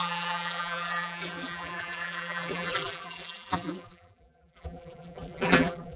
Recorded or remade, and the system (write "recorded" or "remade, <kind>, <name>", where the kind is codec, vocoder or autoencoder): remade, vocoder, BigVGAN v2